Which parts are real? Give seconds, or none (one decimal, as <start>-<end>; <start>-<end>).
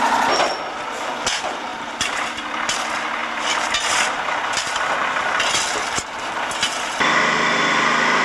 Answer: 0.0-8.2